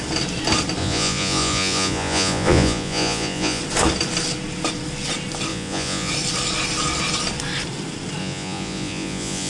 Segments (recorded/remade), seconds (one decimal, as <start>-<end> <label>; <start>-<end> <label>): 0.0-0.8 recorded; 0.8-3.6 remade; 3.6-5.5 recorded; 5.5-6.1 remade; 6.1-8.2 recorded; 8.2-9.5 remade